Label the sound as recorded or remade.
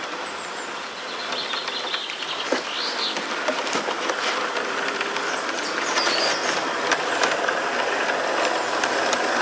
recorded